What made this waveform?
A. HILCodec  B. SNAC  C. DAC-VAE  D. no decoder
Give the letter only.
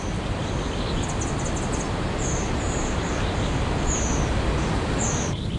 D